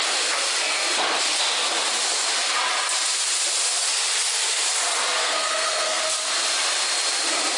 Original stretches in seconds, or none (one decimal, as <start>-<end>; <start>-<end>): 0.0-5.2; 6.0-7.6